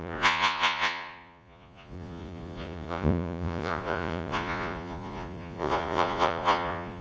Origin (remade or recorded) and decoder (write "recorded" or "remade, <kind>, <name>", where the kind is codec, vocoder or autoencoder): remade, vocoder, Vocos